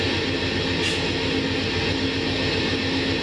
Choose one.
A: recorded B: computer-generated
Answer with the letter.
A